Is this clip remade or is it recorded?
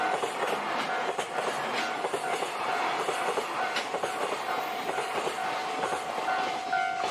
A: recorded